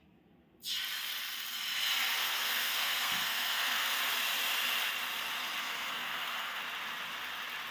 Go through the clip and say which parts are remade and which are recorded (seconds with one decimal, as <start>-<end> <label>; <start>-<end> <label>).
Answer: 0.0-2.2 recorded; 2.2-4.0 remade; 4.0-5.6 recorded; 5.6-6.6 remade; 6.6-7.7 recorded

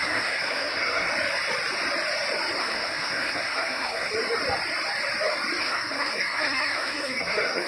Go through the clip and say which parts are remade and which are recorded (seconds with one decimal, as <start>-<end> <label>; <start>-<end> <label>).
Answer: 0.0-1.1 remade; 1.1-2.6 recorded; 2.6-4.1 remade; 4.1-5.6 recorded; 5.6-7.7 remade